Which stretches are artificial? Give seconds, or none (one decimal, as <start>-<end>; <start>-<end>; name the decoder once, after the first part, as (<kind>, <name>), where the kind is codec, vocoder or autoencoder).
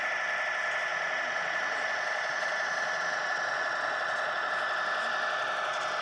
0.9-4.5 (vocoder, Vocos)